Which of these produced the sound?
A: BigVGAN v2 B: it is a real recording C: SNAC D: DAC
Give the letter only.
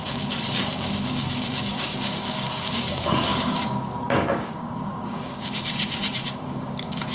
D